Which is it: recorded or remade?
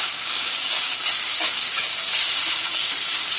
remade